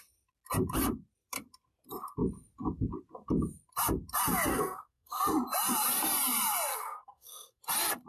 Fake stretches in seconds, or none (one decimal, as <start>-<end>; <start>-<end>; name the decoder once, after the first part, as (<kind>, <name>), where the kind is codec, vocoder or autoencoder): 4.5-5.2 (codec, SNAC); 6.7-7.6